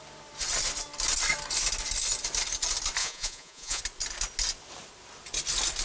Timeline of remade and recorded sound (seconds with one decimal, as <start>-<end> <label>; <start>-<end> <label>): 0.0-3.0 recorded; 3.0-3.8 remade; 3.8-5.8 recorded